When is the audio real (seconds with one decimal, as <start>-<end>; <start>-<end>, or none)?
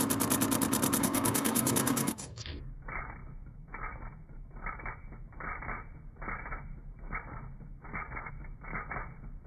0.0-1.0; 2.7-9.5